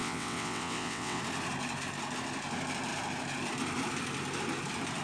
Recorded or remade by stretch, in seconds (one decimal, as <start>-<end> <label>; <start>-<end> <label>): 0.0-1.2 remade; 1.2-5.0 recorded